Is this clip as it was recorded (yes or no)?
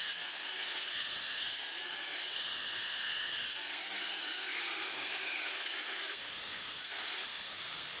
no